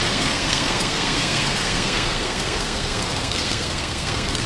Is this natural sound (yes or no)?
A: no